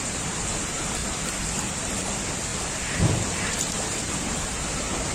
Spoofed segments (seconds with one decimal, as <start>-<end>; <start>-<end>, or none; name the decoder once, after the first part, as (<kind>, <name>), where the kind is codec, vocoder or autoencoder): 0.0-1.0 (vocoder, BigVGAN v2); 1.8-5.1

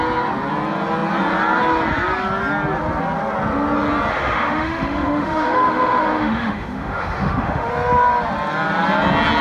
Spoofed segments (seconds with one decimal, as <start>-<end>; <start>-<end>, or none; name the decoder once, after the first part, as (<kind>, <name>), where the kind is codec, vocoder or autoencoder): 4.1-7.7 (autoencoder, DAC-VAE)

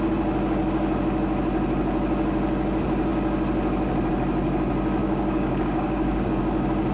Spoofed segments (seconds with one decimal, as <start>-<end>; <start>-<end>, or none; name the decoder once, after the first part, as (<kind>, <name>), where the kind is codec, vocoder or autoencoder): 5.0-6.4 (codec, DAC)

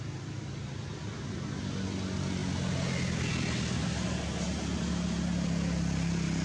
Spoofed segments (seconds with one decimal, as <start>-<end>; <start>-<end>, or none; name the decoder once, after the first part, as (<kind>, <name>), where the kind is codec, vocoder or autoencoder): none

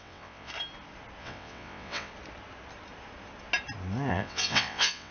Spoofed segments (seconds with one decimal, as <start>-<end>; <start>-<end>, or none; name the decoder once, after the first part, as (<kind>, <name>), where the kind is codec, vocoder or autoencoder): 0.0-0.5 (vocoder, WaveNeXt); 1.2-2.1; 4.1-5.1

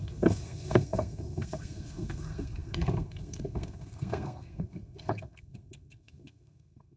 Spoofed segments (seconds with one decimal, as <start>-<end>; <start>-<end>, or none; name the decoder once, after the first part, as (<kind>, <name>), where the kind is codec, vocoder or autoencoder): 0.0-7.0 (codec, SNAC)

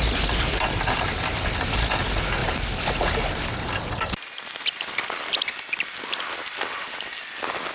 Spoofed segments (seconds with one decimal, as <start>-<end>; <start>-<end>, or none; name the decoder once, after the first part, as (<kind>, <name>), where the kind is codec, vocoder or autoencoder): none